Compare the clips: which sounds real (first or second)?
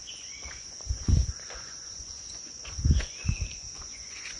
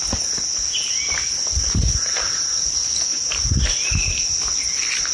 second